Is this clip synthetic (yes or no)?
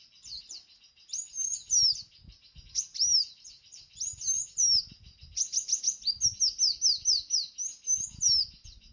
no